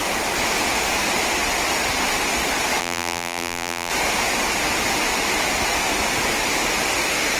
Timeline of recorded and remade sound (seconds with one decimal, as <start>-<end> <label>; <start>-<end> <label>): 0.0-2.8 recorded; 2.8-3.9 remade; 3.9-7.4 recorded